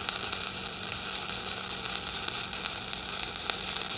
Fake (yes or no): no